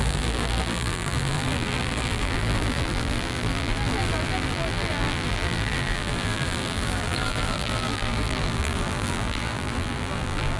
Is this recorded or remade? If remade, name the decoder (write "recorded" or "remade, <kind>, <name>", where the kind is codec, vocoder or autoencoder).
remade, vocoder, BigVGAN v2